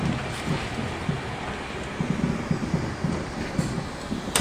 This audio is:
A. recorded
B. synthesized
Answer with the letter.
A